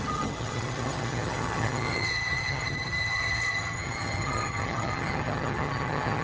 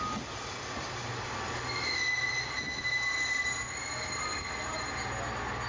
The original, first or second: second